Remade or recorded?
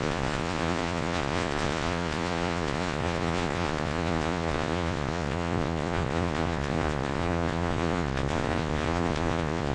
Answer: remade